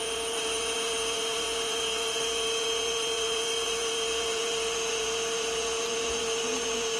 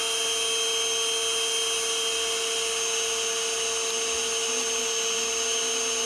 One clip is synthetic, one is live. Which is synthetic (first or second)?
first